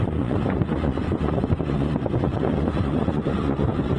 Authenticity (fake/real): fake